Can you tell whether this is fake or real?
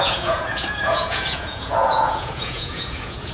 fake